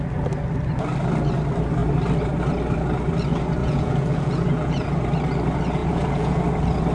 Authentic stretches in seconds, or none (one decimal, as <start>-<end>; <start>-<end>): 0.0-3.6; 5.0-5.8; 6.4-6.9